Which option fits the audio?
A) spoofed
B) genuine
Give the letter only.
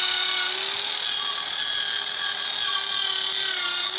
B